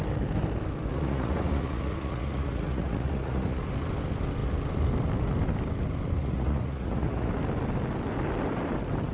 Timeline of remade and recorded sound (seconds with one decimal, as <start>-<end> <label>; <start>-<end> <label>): 0.0-0.9 recorded; 0.9-3.6 remade; 3.6-6.2 recorded; 6.2-7.3 remade; 7.3-9.1 recorded